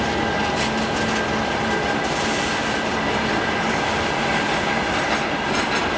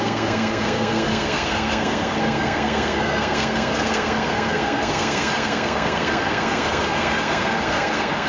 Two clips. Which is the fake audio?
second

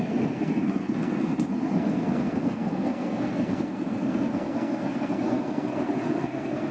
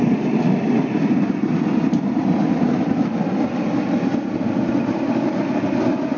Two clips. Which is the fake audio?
first